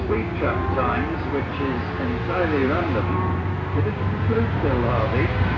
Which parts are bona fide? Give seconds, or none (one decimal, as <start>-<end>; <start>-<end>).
0.0-2.6; 3.8-5.6

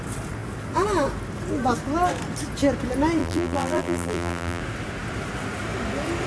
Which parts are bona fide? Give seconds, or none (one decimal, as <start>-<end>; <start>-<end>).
0.0-3.2; 4.6-6.3

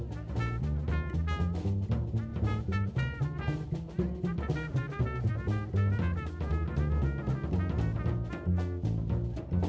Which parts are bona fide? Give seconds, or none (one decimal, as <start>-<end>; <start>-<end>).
0.0-2.3; 5.3-9.7